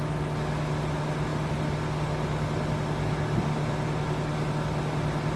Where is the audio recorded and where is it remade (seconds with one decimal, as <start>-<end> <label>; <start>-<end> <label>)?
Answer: 0.0-5.4 recorded